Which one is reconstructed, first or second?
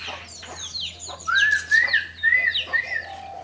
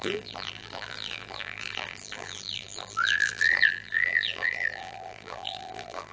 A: second